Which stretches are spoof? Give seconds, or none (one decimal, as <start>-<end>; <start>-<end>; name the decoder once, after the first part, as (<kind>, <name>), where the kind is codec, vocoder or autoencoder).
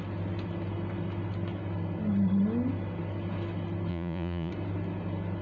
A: 3.9-4.5 (vocoder, Vocos)